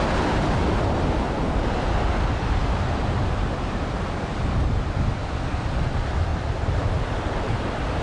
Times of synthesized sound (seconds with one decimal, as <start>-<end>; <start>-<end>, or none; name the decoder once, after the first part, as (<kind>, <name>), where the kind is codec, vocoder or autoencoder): 6.3-7.5 (vocoder, BigVGAN v2)